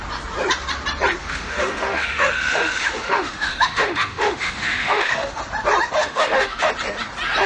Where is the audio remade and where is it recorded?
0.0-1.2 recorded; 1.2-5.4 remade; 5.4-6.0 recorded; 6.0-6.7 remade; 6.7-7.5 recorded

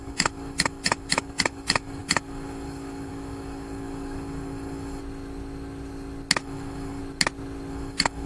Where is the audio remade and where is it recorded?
0.0-5.0 remade; 5.0-6.4 recorded; 6.4-7.0 remade; 7.0-7.7 recorded; 7.7-8.3 remade

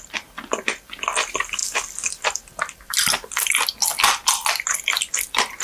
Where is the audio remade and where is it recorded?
0.0-5.6 recorded

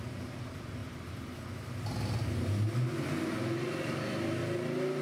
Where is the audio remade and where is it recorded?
0.0-0.8 remade; 0.8-3.8 recorded; 3.8-4.4 remade; 4.4-5.0 recorded